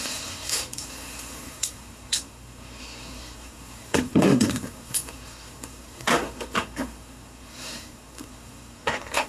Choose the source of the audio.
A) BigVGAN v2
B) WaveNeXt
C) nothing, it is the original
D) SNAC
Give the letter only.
D